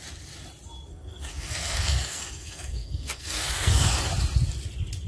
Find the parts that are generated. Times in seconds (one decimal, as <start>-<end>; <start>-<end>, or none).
0.9-4.0